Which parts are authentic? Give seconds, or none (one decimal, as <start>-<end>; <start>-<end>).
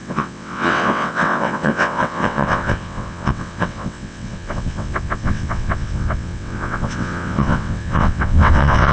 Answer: none